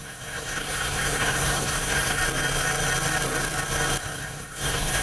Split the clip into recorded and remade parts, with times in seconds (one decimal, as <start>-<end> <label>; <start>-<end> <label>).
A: 0.0-2.2 remade; 2.2-4.0 recorded; 4.0-5.0 remade